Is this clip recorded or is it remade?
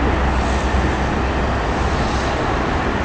recorded